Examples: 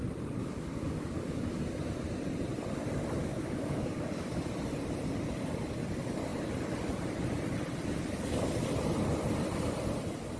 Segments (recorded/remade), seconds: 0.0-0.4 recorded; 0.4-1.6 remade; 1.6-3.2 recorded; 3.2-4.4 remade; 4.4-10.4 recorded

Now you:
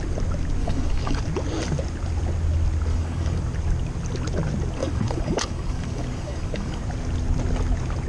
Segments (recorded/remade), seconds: 0.0-0.6 recorded; 0.6-1.2 remade; 1.2-2.9 recorded; 2.9-3.4 remade; 3.4-4.8 recorded; 4.8-6.8 remade; 6.8-8.1 recorded

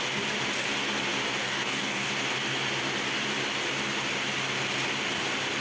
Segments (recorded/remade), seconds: 0.0-1.4 recorded; 1.4-2.1 remade; 2.1-5.6 recorded

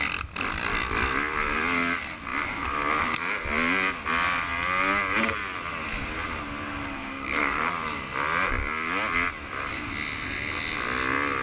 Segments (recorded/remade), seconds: 0.0-7.0 recorded; 7.0-7.7 remade; 7.7-11.4 recorded

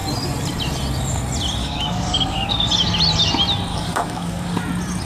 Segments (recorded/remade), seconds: 0.0-1.6 recorded; 1.6-2.7 remade; 2.7-3.7 recorded; 3.7-4.6 remade; 4.6-5.1 recorded